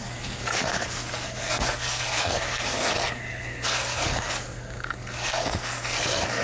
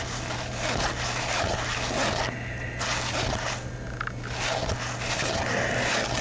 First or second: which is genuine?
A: second